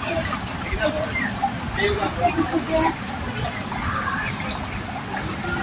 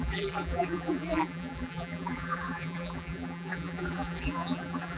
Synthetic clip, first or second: second